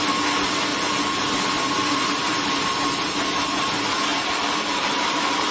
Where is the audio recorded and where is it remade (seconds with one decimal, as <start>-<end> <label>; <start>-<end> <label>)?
0.0-5.5 recorded